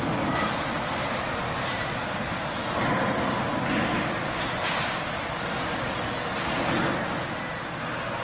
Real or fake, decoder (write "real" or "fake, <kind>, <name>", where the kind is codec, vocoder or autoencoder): real